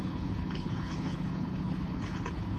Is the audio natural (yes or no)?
no